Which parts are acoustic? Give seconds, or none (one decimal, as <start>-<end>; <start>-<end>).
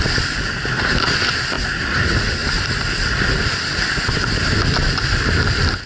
0.0-5.9